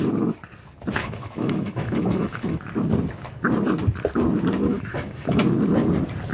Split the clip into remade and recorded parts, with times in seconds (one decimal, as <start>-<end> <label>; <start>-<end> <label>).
0.0-1.0 recorded; 1.0-2.6 remade; 2.6-4.7 recorded; 4.7-5.4 remade; 5.4-6.3 recorded